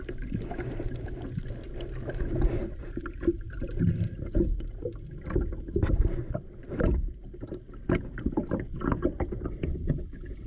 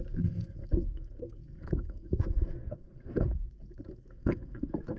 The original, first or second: first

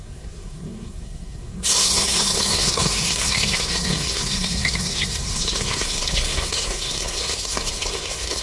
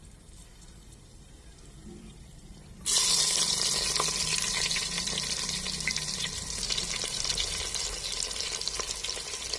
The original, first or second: second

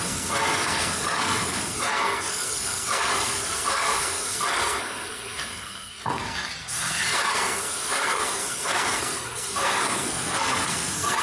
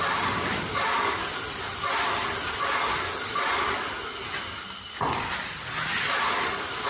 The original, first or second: second